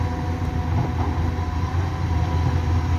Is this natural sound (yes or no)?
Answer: yes